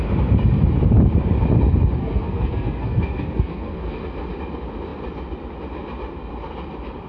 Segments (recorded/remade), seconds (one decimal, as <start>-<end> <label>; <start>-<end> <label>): 0.0-2.0 recorded; 2.0-4.0 remade; 4.0-7.1 recorded